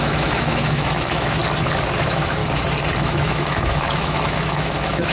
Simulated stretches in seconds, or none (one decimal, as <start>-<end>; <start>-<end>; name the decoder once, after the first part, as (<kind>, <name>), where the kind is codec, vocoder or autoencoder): 0.0-1.4 (autoencoder, DAC-VAE); 2.0-2.4; 3.0-5.1

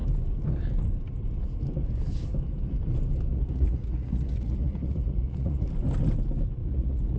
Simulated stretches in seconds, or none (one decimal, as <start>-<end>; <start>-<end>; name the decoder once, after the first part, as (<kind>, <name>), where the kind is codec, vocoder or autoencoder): 3.3-5.7 (vocoder, Vocos); 6.6-7.2

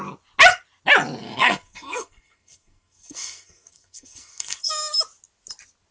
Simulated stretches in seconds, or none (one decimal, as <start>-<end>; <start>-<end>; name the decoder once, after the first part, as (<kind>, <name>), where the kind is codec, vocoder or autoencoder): 1.2-4.7 (codec, SNAC)

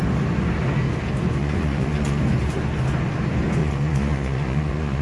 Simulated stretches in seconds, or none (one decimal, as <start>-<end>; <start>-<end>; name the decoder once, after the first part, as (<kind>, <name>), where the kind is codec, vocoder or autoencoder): 1.4-2.2 (vocoder, Vocos); 3.6-5.0

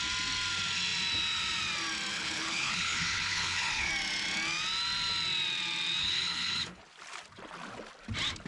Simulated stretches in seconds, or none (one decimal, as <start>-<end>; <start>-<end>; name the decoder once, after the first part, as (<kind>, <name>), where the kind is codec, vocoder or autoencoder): 2.1-3.9 (codec, HILCodec); 6.0-6.8

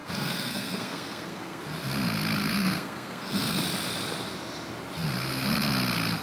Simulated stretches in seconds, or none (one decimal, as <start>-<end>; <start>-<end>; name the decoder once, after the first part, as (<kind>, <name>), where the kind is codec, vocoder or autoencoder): 0.0-1.6 (codec, SNAC); 2.4-3.6

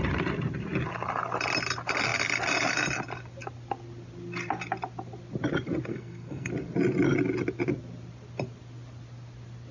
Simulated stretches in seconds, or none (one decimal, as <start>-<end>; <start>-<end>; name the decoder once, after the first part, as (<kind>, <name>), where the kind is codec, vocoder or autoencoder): 5.9-6.5 (codec, SNAC)